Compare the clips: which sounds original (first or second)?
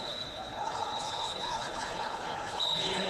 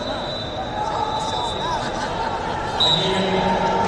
second